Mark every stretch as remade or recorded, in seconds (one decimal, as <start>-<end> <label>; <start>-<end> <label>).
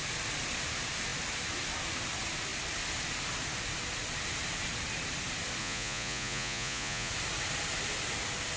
0.0-5.6 recorded; 5.6-7.1 remade; 7.1-8.6 recorded